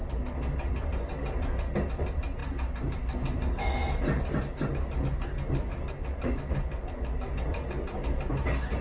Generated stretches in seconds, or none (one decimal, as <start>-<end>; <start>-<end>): none